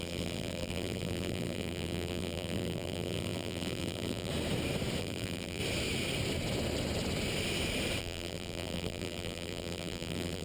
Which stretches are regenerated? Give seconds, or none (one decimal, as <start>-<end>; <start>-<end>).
0.0-4.3; 5.0-5.6; 8.0-10.4